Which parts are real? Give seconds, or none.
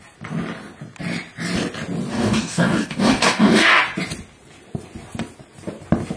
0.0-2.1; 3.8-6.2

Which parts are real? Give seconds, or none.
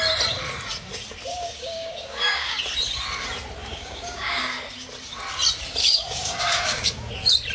0.0-1.3; 2.6-3.6; 4.7-5.8; 7.1-7.5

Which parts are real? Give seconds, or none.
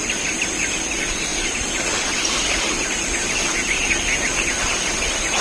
0.0-5.4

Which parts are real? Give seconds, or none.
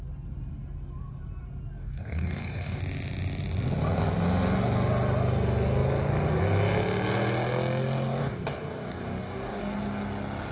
0.0-1.8; 2.8-8.2; 9.6-10.5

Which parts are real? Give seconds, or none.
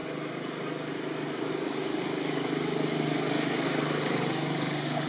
0.0-1.5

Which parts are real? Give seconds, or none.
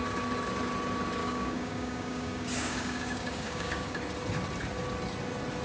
0.0-1.2; 4.0-5.6